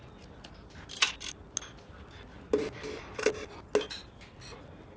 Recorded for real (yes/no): yes